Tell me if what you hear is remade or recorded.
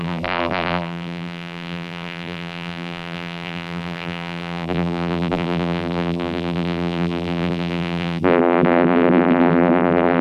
remade